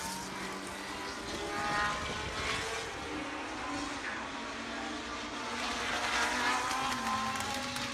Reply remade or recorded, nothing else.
recorded